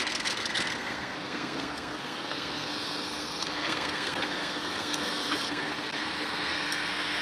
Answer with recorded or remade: remade